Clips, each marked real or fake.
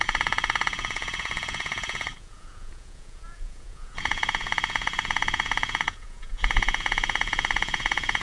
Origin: fake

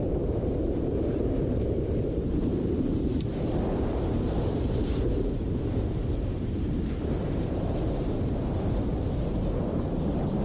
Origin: fake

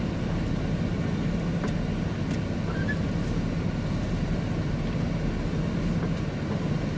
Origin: real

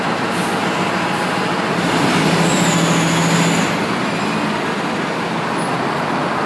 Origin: real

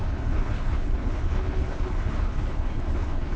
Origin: fake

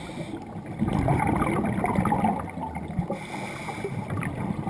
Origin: real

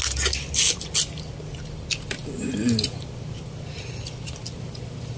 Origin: real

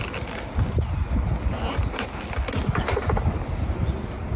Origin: real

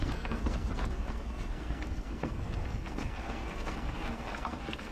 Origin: fake